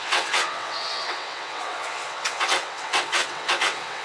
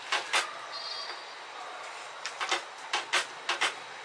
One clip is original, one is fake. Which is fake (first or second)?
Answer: first